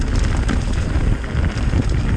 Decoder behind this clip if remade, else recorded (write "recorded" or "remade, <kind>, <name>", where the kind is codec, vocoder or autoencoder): recorded